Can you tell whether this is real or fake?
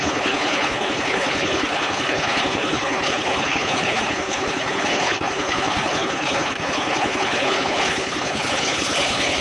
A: fake